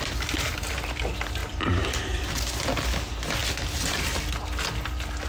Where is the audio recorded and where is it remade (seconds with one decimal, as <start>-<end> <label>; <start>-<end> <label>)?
0.0-1.4 recorded; 1.4-2.3 remade; 2.3-5.3 recorded